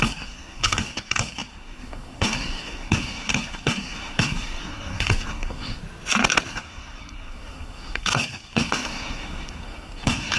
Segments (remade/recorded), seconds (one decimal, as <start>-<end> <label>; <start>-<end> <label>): 0.0-5.8 remade; 5.8-6.5 recorded; 6.5-10.4 remade